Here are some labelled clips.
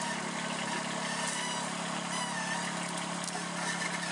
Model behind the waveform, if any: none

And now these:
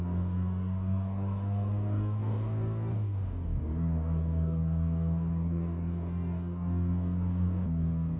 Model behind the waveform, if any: codec, DAC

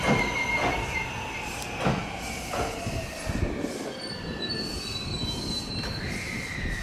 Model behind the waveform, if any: none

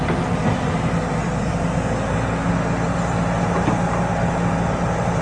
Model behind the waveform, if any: none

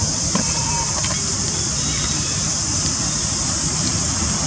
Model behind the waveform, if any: none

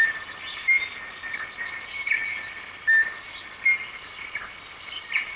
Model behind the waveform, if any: none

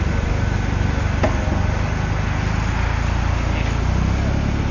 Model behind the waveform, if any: none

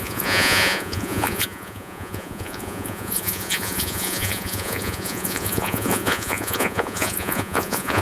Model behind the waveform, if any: vocoder, Vocos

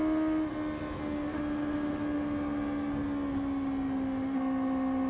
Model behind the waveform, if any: none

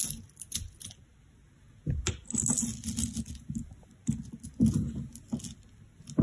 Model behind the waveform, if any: none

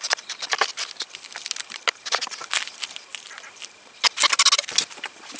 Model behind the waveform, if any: none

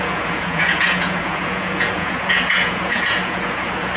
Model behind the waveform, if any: vocoder, Vocos